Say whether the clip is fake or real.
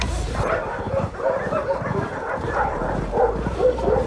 fake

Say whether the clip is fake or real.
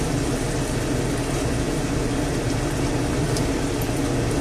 real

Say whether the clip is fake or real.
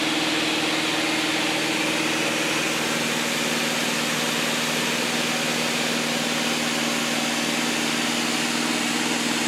real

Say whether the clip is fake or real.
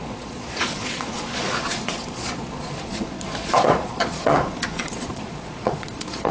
fake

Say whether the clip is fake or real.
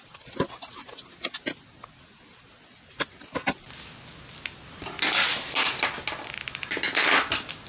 real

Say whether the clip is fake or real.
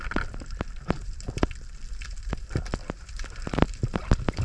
fake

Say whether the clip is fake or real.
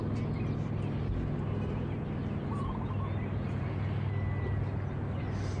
real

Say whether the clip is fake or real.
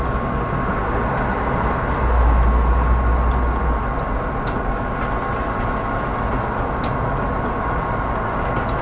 real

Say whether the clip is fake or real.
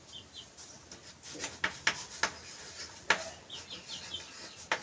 real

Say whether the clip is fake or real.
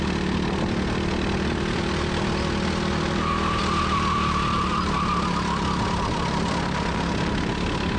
real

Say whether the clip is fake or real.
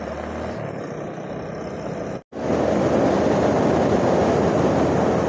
real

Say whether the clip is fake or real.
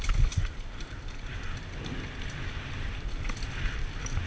real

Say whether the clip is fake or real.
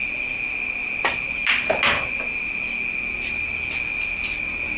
real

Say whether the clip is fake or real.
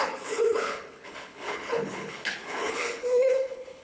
fake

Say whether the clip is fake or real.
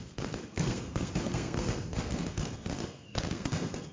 fake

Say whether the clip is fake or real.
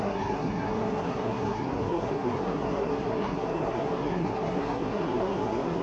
fake